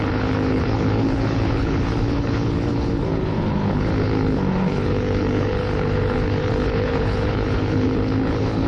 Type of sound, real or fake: fake